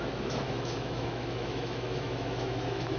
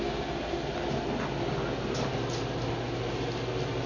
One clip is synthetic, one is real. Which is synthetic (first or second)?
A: first